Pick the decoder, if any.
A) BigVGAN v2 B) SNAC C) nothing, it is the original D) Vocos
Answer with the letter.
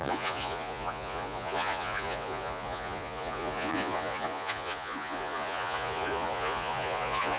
D